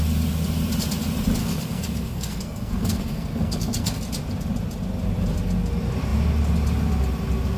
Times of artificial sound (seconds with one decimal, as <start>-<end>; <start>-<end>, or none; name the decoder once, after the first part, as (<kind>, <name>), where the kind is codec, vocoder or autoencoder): 1.4-4.0 (codec, SNAC)